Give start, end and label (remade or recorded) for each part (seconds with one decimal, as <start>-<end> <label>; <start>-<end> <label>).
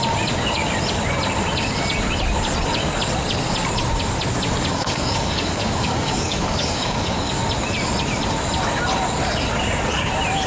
0.0-4.7 recorded; 4.7-7.4 remade; 7.4-10.5 recorded